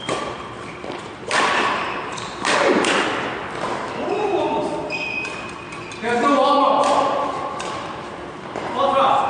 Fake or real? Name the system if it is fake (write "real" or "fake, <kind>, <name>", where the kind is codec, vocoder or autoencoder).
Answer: fake, vocoder, BigVGAN v2